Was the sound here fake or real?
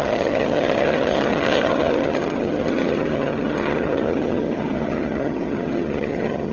fake